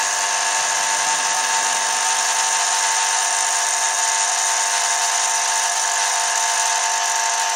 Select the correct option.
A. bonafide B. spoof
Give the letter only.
A